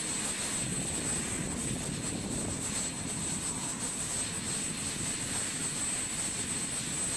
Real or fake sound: real